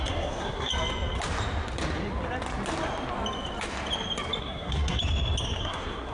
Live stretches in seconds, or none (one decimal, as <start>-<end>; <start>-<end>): 0.7-4.4; 5.0-5.6